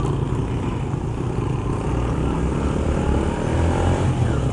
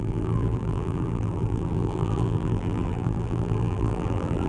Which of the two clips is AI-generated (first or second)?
second